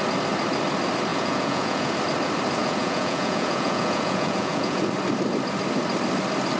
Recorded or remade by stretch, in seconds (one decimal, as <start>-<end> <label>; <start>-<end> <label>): 0.0-1.1 recorded; 1.1-1.9 remade; 1.9-2.6 recorded; 2.6-4.8 remade; 4.8-6.6 recorded